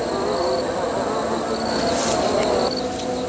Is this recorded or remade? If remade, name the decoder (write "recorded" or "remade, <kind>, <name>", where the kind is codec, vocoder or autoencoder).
recorded